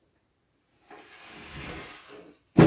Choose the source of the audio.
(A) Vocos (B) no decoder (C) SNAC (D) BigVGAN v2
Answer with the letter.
B